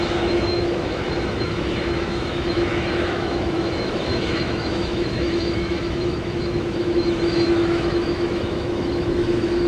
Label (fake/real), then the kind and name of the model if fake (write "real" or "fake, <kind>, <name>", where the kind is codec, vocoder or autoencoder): fake, autoencoder, DAC-VAE